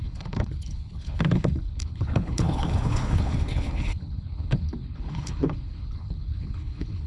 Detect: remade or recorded remade